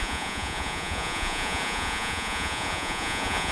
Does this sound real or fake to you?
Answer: fake